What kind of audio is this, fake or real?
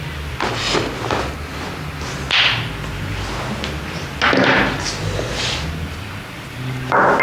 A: real